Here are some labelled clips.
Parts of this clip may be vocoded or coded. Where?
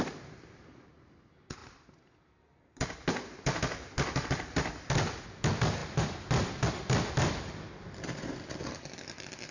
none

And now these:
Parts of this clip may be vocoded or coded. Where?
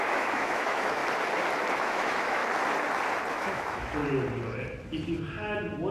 0.0-1.0 (autoencoder, DAC-VAE); 1.7-2.4; 3.3-4.0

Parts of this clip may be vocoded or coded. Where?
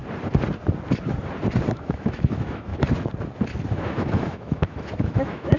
1.7-2.7 (autoencoder, DAC-VAE); 3.7-5.6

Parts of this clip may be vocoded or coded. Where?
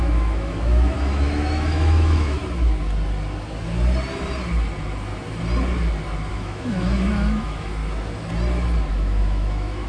0.0-2.4 (autoencoder, DAC-VAE); 6.3-7.8; 8.9-9.9